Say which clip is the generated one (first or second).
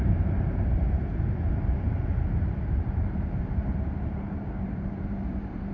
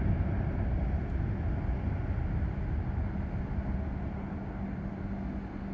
first